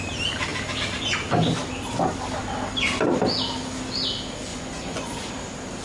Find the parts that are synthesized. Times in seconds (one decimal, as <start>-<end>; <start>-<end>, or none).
4.5-5.3